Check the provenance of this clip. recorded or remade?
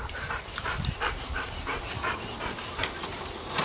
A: remade